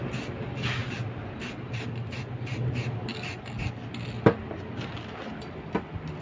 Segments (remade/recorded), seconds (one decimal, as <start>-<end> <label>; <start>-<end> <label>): 0.0-6.2 recorded